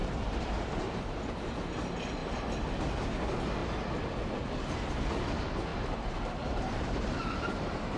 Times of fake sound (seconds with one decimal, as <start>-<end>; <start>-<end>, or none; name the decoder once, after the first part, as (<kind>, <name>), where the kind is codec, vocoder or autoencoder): 0.0-1.7 (vocoder, BigVGAN v2); 5.7-8.0